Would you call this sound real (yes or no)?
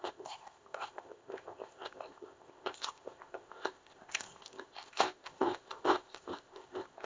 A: no